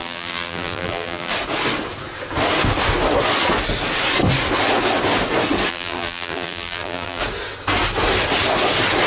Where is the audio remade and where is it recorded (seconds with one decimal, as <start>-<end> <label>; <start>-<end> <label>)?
0.0-1.3 remade; 1.3-5.7 recorded; 5.7-7.2 remade; 7.2-9.1 recorded